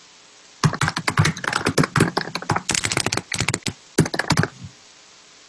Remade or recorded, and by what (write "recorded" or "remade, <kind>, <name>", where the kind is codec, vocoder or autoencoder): recorded